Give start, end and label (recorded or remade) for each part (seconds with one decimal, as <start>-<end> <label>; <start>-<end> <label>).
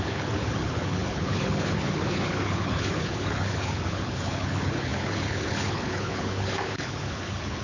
0.0-7.6 remade